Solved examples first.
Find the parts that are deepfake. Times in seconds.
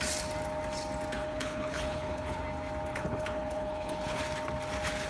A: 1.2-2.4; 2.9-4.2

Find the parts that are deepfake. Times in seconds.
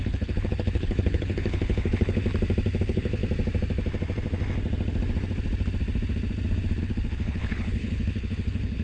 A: 0.0-2.2; 2.8-3.2; 6.8-8.8